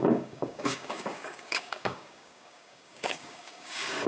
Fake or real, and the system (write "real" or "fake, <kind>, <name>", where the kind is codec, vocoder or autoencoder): fake, codec, DAC